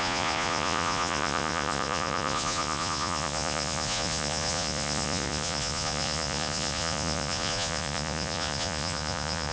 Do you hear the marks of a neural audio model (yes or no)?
yes